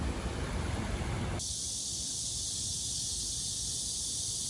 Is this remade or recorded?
recorded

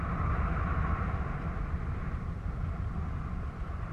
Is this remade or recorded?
remade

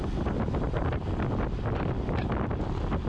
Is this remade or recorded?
recorded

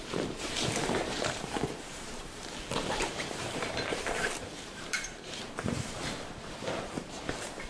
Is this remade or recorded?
remade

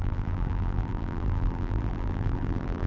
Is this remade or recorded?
remade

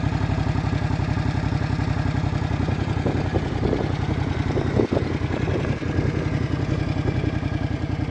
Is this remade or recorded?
recorded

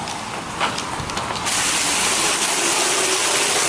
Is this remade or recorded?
recorded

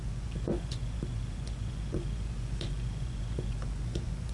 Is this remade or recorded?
remade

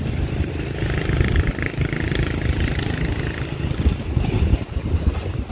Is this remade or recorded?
recorded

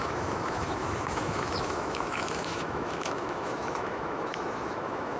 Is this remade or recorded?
remade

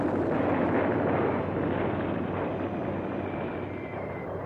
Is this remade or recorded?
recorded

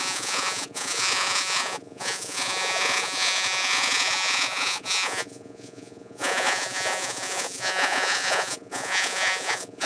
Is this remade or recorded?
remade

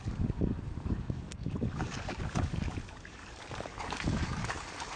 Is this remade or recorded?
remade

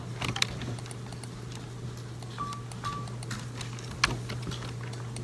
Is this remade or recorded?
recorded